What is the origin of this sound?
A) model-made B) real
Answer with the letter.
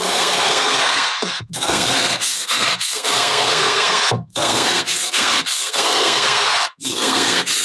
A